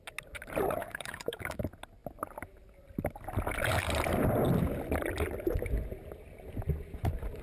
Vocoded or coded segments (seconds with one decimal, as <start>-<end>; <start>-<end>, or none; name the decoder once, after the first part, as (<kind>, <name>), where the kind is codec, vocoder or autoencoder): 0.8-1.6 (autoencoder, DAC-VAE)

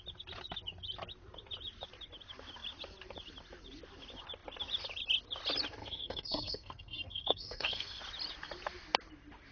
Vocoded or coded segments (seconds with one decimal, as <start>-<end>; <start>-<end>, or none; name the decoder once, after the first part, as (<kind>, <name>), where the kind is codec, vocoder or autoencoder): 5.8-8.0 (codec, SNAC)

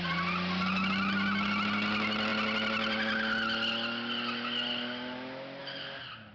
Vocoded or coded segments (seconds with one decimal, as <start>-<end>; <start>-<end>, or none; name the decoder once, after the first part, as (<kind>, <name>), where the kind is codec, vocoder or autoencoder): none

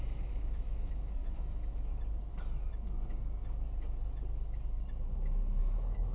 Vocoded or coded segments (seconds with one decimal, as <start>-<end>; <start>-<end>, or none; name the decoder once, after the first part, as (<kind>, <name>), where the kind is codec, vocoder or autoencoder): 0.0-1.9 (autoencoder, DAC-VAE); 5.6-6.1

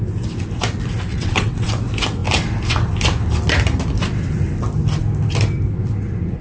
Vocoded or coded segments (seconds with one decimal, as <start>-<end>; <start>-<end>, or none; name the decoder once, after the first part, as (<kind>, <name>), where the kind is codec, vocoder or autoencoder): 1.1-1.7 (vocoder, WaveNeXt)

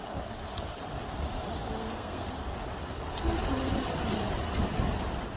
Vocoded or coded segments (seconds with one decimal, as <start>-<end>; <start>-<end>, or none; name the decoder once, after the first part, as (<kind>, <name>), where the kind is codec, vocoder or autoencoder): 1.8-2.3 (codec, SNAC)

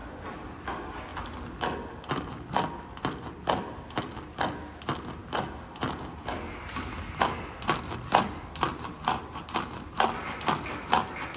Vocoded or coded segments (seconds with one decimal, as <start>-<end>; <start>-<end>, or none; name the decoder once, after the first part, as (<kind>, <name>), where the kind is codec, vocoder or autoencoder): 0.0-0.6 (vocoder, BigVGAN v2)